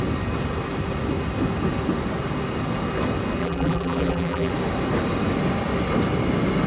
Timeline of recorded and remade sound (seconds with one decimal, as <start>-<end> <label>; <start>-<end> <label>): 0.0-3.4 recorded; 3.4-4.5 remade; 4.5-6.7 recorded